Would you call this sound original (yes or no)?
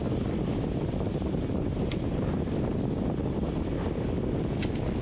yes